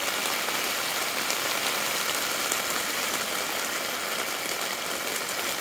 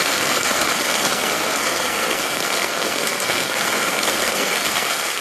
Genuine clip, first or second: first